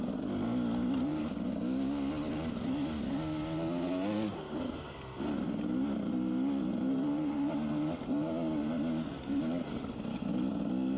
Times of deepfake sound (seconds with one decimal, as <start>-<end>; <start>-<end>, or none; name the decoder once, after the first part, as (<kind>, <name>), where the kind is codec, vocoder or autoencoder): none